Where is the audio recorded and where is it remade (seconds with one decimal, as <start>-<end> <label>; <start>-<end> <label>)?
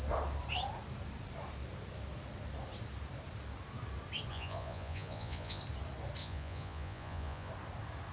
0.0-4.3 recorded; 4.3-5.6 remade; 5.6-6.2 recorded; 6.2-7.5 remade; 7.5-8.1 recorded